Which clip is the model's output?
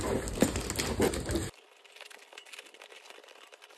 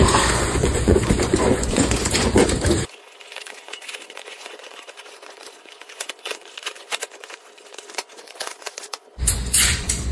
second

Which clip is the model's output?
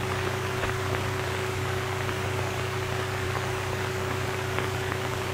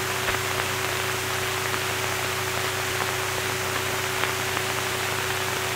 first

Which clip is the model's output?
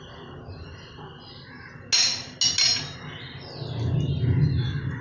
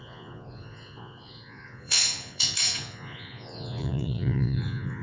second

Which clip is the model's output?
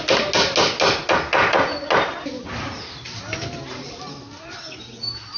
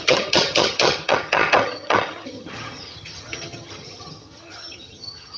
second